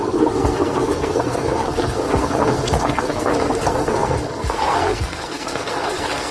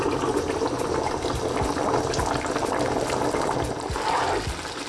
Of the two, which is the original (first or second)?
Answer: second